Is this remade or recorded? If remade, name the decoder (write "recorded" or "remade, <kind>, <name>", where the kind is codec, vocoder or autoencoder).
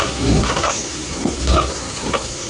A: remade, codec, SNAC